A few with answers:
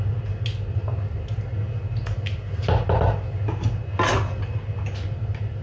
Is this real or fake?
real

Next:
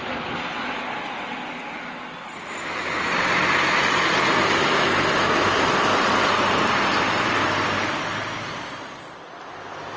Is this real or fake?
real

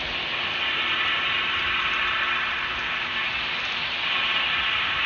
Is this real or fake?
real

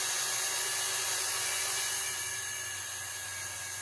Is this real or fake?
fake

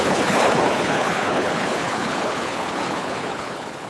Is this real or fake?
fake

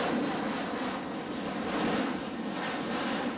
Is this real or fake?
real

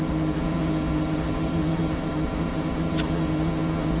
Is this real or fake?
fake